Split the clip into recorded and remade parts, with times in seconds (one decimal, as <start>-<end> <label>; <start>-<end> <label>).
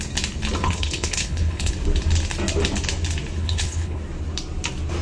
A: 0.0-0.6 recorded; 0.6-1.7 remade; 1.7-3.4 recorded; 3.4-4.0 remade; 4.0-5.0 recorded